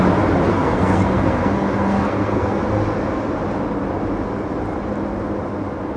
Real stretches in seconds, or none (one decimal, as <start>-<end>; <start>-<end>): 0.0-0.5; 2.6-6.0